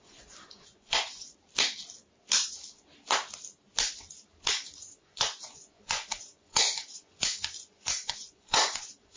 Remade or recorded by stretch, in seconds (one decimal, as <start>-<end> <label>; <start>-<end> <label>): 0.0-1.3 remade; 1.3-4.5 recorded; 4.5-9.2 remade